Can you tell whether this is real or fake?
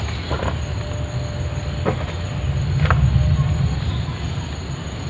real